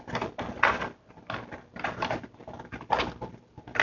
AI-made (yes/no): no